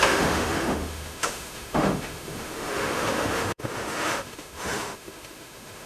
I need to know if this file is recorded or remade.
remade